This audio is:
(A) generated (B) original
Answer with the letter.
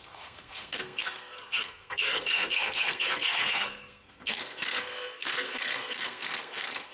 A